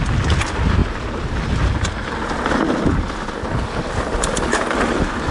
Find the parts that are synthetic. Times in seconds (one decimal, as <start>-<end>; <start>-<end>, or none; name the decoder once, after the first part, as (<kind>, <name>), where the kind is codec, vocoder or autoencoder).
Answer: none